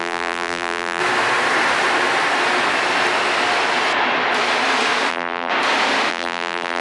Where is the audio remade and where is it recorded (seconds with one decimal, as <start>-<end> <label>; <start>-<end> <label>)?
0.0-1.0 remade; 1.0-5.1 recorded; 5.1-5.5 remade; 5.5-6.1 recorded; 6.1-6.8 remade